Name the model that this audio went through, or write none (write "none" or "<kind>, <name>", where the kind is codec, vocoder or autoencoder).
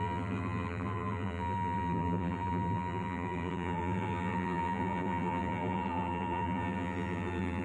vocoder, BigVGAN v2